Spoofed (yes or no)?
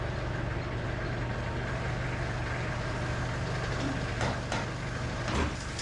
no